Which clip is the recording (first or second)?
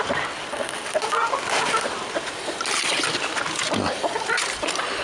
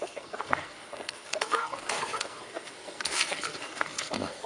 first